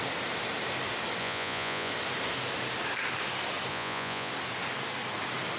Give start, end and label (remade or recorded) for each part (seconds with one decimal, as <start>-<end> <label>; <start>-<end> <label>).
0.0-1.2 recorded; 1.2-1.9 remade; 1.9-3.7 recorded; 3.7-4.3 remade; 4.3-5.6 recorded